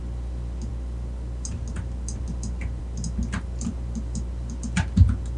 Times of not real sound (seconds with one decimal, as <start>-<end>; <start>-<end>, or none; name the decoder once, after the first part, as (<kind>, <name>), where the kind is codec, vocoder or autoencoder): none